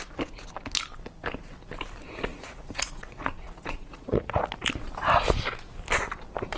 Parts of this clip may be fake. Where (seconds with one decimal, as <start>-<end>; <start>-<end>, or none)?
2.3-4.4